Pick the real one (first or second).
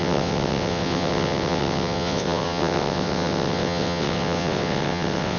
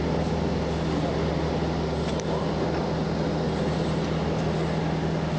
second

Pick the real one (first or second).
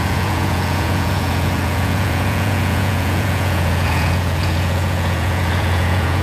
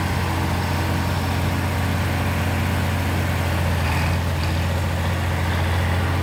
second